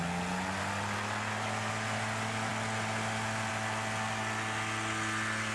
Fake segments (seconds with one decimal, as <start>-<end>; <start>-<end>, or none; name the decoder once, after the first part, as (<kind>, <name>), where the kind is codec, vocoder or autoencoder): none